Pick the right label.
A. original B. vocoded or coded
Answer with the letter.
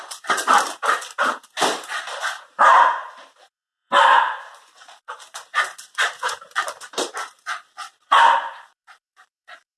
B